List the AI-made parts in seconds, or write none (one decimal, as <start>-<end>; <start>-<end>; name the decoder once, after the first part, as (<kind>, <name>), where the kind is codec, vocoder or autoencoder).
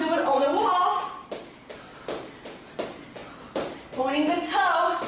0.7-1.3 (vocoder, BigVGAN v2); 1.9-2.7; 3.2-4.1